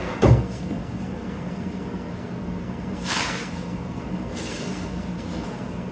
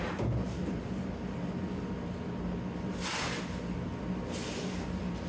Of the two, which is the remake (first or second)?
first